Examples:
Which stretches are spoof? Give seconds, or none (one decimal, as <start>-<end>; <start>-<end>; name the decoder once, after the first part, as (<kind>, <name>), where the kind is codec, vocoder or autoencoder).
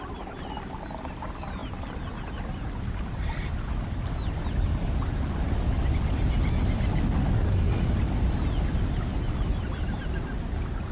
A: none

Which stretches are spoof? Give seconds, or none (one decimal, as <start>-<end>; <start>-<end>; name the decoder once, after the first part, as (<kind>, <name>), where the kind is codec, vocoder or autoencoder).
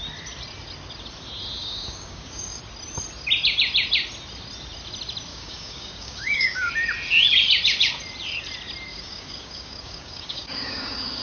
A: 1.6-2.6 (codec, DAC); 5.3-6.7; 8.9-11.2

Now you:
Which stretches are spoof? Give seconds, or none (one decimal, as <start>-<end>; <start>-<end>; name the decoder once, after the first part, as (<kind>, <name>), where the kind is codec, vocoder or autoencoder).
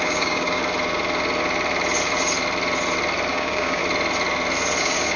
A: 0.0-0.6 (codec, DAC); 3.3-3.8; 4.8-5.2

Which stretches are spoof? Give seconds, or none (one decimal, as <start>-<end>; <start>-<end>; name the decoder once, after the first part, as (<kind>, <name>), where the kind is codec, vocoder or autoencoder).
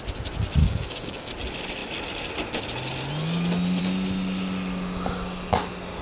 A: 0.6-1.3 (codec, DAC)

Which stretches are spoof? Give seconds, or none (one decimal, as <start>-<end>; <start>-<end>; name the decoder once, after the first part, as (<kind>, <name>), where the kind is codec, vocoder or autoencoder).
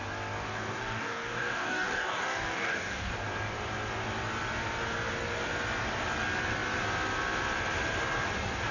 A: 0.4-3.1 (codec, DAC)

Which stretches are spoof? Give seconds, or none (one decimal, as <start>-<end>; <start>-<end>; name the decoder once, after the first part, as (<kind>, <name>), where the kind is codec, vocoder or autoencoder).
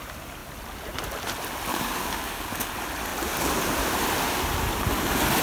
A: 1.7-2.7 (codec, DAC)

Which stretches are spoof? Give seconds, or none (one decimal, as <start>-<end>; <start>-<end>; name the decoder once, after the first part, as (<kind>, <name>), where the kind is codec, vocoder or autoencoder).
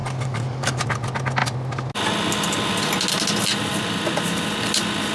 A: 0.0-0.8 (codec, DAC)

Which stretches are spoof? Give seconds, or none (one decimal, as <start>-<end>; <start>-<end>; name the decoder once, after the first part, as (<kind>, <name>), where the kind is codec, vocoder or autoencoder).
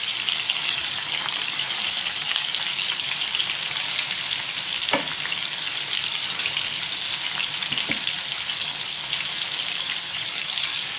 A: 0.0-3.4 (codec, DAC); 5.3-6.8; 8.3-8.9; 9.8-11.0